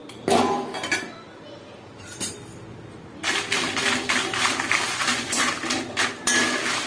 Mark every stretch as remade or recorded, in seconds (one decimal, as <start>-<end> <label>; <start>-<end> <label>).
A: 0.0-4.9 recorded; 4.9-5.5 remade; 5.5-6.9 recorded